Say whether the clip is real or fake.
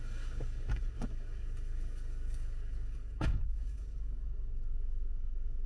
fake